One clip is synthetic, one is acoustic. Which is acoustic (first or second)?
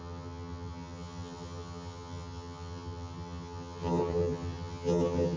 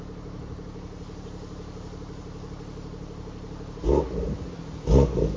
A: second